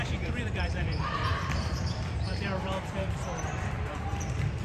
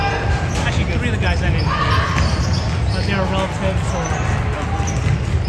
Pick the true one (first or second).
second